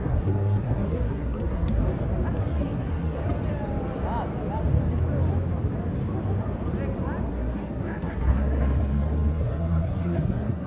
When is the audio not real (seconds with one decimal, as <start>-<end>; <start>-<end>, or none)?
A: 0.0-1.8; 2.4-3.2; 7.3-10.7